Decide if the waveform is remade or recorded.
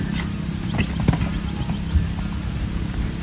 recorded